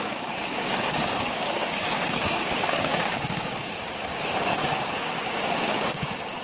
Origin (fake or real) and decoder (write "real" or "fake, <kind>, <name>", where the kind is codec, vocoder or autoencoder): fake, codec, DAC